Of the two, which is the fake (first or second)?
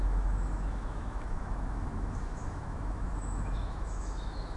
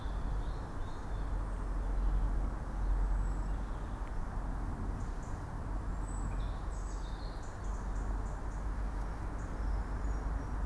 first